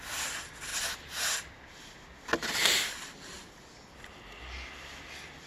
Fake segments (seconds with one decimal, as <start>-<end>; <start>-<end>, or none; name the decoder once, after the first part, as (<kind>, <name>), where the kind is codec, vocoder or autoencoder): none